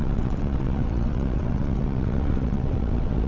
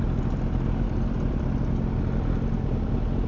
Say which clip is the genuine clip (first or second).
second